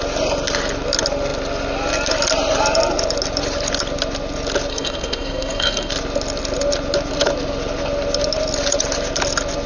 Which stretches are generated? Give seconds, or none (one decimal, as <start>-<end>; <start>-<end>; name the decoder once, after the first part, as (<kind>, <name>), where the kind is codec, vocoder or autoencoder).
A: 4.7-5.9 (codec, SNAC)